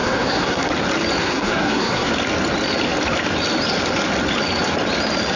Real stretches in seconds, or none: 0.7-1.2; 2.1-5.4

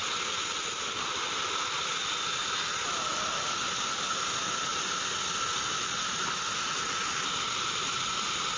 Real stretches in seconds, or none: 0.0-8.6

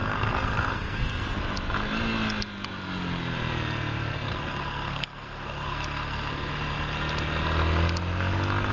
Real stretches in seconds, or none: 1.4-4.3; 6.5-8.7

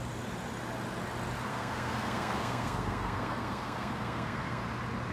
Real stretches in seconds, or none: 0.0-1.5; 4.6-5.1

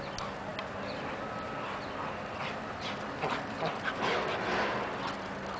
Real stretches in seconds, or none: 0.0-5.6

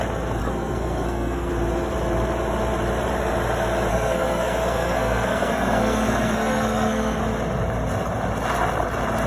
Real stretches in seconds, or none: 0.0-0.4; 1.5-3.9; 7.2-9.3

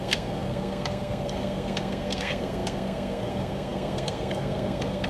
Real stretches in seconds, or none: none

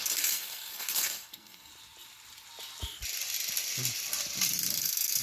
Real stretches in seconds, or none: 1.7-4.8